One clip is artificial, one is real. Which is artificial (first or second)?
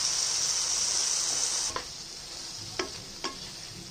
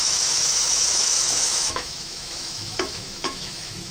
second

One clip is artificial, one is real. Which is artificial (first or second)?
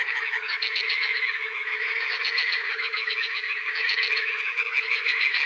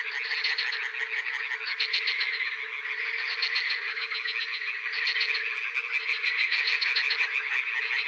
first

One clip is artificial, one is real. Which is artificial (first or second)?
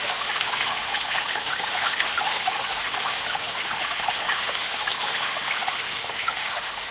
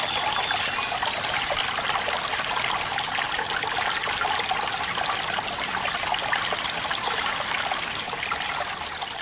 first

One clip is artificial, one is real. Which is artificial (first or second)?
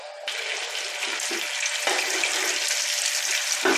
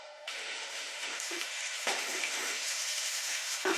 second